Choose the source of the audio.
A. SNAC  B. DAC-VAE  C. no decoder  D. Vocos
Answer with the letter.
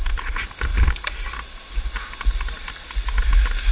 C